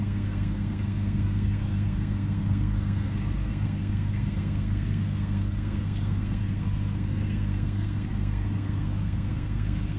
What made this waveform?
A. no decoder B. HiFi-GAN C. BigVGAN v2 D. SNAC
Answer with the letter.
D